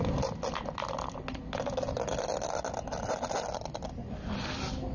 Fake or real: real